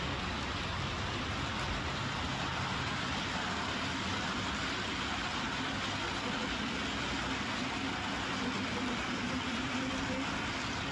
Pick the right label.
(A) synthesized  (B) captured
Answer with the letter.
B